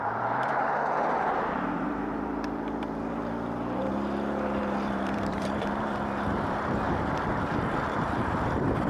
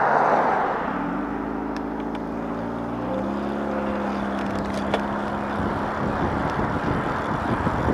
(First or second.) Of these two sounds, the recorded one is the second